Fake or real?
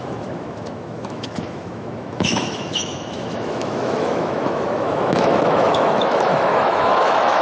fake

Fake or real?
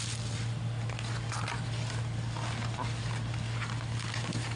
real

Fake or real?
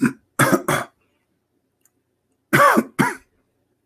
real